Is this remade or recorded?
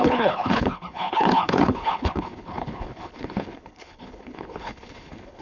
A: remade